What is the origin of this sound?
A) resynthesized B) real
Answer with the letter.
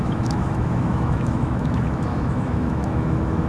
A